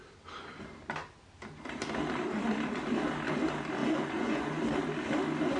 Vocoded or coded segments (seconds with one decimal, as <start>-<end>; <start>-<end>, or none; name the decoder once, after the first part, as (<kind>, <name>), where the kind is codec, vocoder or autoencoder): 3.8-4.6 (vocoder, Vocos)